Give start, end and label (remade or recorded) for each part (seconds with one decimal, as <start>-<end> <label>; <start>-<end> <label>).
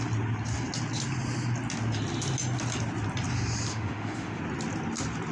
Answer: 0.0-3.7 recorded; 3.7-4.4 remade; 4.4-5.3 recorded